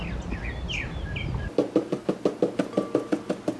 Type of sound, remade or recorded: recorded